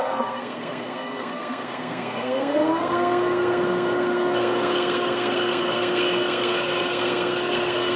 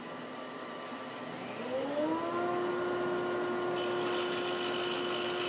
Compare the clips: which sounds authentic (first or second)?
second